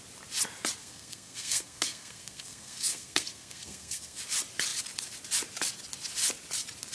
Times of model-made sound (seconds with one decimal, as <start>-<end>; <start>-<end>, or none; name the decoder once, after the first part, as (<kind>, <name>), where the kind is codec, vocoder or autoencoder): 0.8-4.2 (codec, SNAC)